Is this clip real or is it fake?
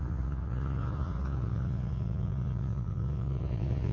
fake